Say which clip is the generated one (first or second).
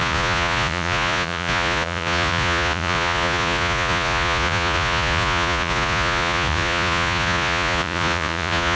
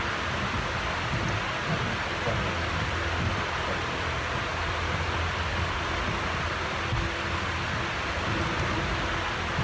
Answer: first